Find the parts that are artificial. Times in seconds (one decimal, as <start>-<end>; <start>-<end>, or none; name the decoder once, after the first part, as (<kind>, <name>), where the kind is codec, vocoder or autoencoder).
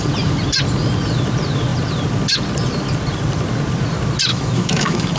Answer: 4.3-5.2 (autoencoder, DAC-VAE)